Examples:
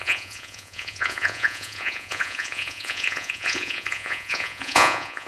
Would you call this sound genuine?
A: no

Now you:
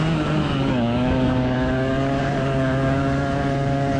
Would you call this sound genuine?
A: no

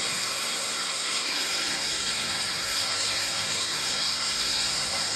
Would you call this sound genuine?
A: no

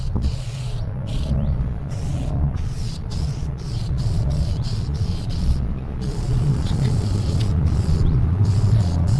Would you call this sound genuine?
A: no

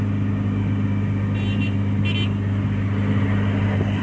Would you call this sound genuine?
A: yes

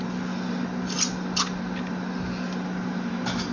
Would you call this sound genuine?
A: yes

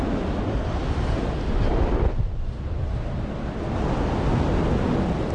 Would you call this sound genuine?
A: yes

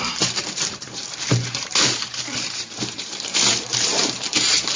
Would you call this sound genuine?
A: no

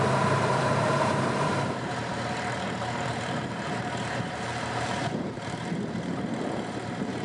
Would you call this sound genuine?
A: no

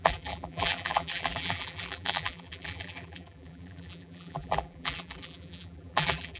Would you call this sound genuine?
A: no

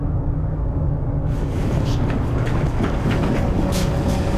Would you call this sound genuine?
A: no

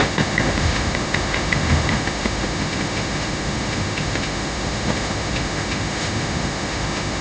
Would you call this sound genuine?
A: no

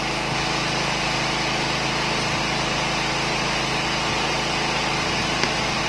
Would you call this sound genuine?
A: yes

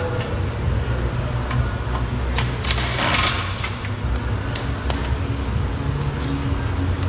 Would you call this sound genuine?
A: yes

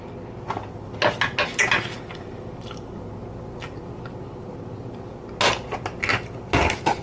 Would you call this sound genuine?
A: yes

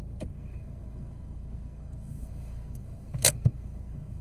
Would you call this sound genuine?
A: no